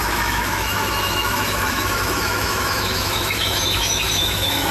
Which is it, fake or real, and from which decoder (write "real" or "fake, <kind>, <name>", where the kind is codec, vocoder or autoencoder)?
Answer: fake, autoencoder, DAC-VAE